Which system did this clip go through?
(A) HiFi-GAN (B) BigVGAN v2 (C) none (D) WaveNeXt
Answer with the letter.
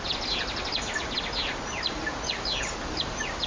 C